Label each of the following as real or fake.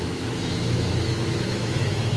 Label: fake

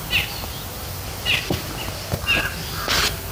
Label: real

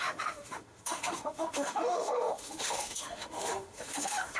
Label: fake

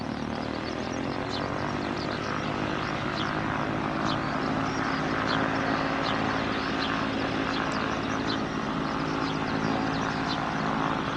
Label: real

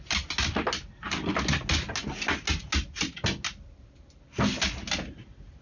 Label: real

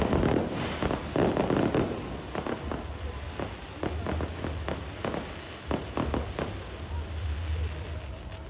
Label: real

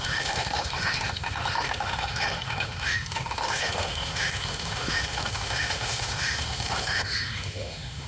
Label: fake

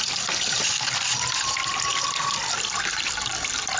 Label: real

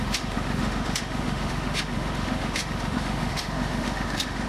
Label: fake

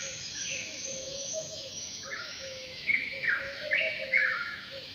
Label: fake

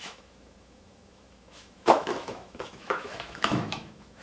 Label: fake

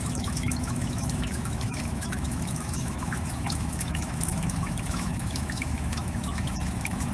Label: fake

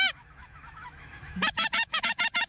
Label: fake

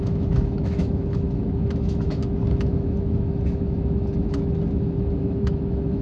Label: fake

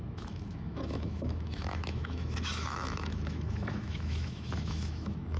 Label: fake